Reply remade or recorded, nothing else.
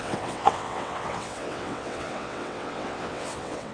remade